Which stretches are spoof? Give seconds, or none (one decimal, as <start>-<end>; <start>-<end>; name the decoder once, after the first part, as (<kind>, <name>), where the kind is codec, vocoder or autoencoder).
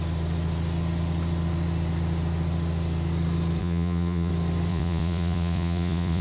3.6-4.3 (vocoder, Vocos); 4.7-6.2